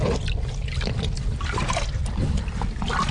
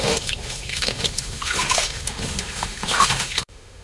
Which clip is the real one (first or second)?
first